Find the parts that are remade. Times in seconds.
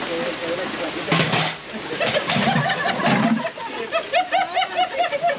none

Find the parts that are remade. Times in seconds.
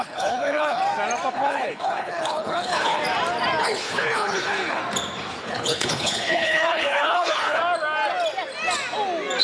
0.0-0.8 (codec, HILCodec); 1.3-3.0; 3.6-4.8; 5.4-7.6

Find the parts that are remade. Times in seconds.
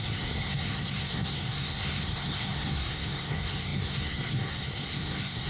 0.0-5.5 (codec, SNAC)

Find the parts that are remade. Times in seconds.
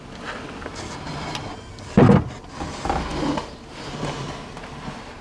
none